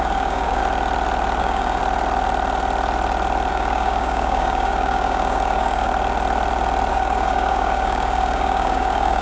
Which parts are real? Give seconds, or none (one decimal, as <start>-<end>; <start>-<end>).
0.6-1.4; 1.8-3.5; 5.9-6.9